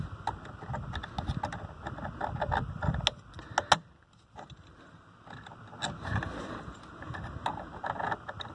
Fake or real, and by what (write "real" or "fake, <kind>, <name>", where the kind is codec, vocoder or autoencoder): real